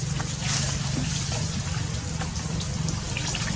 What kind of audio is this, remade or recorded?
recorded